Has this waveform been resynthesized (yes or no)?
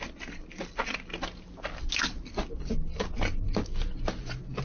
no